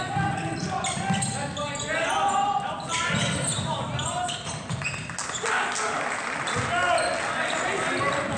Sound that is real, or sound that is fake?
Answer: real